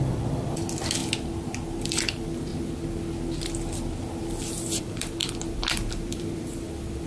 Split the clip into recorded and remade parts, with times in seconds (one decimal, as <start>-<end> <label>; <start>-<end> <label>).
0.0-1.0 remade; 1.0-1.8 recorded; 1.8-2.5 remade; 2.5-4.8 recorded; 4.8-7.1 remade